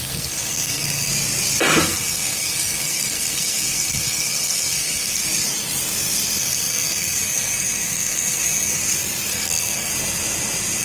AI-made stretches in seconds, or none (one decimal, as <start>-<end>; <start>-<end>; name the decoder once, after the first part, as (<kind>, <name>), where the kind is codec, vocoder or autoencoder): 0.0-1.1 (codec, SNAC); 1.8-5.2; 6.4-8.8; 9.3-9.9